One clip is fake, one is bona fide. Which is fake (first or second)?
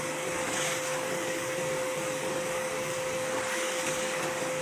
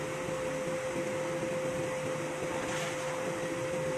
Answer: first